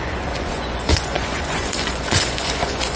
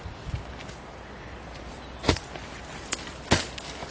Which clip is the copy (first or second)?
first